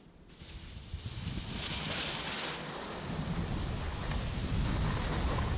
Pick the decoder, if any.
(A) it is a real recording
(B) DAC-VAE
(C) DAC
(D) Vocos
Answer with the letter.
A